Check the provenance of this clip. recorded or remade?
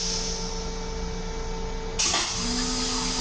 recorded